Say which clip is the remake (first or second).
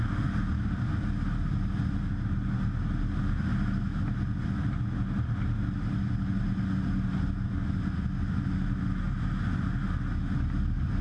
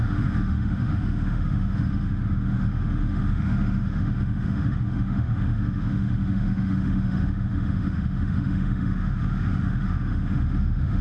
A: second